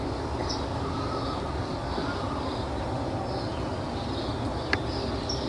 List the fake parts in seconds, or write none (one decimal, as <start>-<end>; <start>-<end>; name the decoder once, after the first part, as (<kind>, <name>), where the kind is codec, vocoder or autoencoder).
none